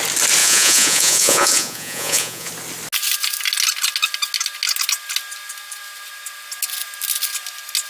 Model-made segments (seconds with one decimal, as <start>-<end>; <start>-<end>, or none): 0.4-2.5